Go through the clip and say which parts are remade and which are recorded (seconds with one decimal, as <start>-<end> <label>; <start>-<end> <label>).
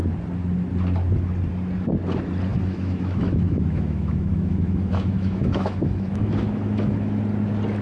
0.0-2.5 recorded; 2.5-7.2 remade; 7.2-7.8 recorded